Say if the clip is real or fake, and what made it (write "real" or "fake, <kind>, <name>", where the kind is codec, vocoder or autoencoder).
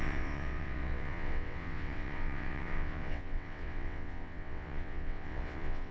fake, vocoder, WaveNeXt